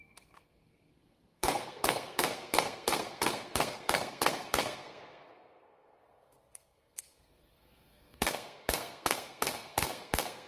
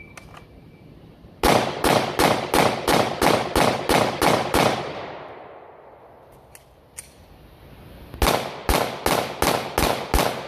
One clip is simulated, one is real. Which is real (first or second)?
second